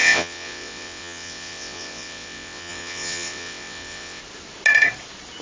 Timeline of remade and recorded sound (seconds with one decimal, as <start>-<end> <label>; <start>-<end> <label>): 0.0-4.2 remade; 4.2-5.4 recorded